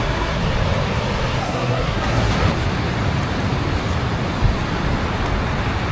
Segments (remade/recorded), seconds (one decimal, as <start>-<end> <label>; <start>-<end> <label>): 0.0-0.4 remade; 0.4-1.4 recorded; 1.4-2.3 remade; 2.3-5.9 recorded